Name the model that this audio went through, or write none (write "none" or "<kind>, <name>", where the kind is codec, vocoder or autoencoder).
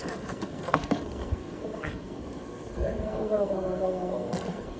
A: codec, SNAC